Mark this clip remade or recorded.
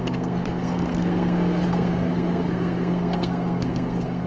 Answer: remade